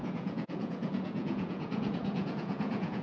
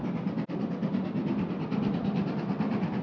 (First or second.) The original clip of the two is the second